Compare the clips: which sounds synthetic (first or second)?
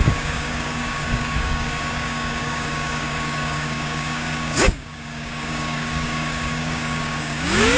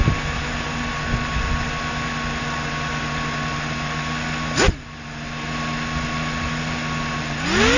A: first